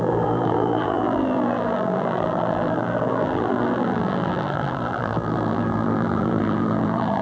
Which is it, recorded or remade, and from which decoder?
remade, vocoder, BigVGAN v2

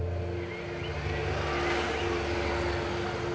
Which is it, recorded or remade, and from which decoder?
recorded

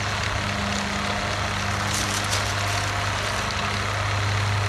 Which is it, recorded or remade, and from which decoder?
recorded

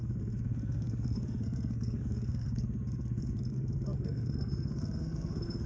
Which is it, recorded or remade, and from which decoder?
remade, codec, SNAC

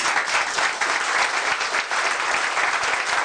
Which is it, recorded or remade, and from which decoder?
recorded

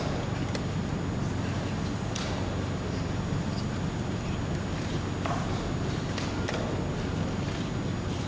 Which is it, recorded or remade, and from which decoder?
recorded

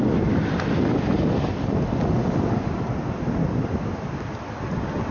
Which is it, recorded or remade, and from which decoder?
recorded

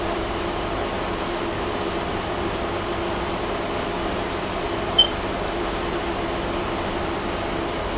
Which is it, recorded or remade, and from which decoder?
remade, vocoder, BigVGAN v2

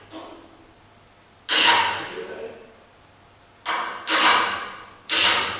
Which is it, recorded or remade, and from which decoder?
recorded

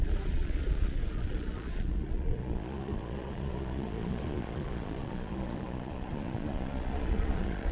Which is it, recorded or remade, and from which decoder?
remade, vocoder, Vocos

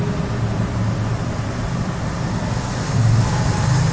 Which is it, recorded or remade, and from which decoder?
recorded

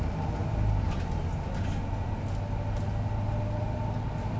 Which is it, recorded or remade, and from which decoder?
recorded